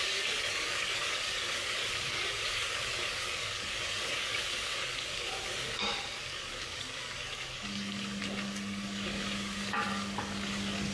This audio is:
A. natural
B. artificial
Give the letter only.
B